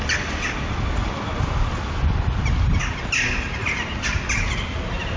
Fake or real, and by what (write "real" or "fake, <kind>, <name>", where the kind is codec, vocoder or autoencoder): real